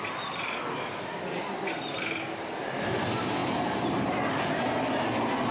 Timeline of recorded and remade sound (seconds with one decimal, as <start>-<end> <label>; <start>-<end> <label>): 0.0-5.5 recorded